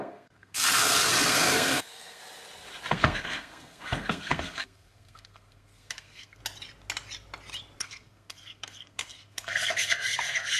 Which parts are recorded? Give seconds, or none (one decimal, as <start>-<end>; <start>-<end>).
2.2-2.9; 6.4-7.8